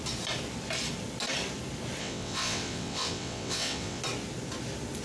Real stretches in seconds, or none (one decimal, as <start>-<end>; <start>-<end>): 0.0-2.0; 4.0-5.0